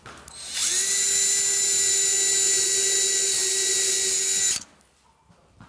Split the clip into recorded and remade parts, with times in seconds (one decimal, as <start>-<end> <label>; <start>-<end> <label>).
0.0-5.7 recorded